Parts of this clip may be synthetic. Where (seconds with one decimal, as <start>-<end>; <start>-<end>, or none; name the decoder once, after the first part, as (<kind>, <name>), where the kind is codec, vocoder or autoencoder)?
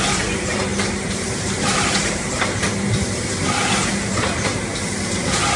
none